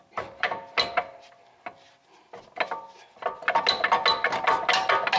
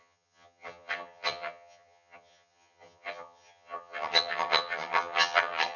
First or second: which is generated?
second